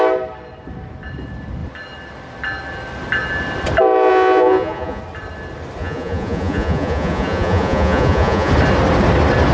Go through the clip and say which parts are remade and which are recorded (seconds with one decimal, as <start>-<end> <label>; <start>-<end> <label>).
0.0-4.1 recorded; 4.1-5.0 remade; 5.0-5.8 recorded; 5.8-8.5 remade; 8.5-9.5 recorded